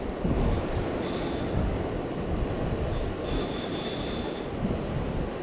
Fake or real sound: real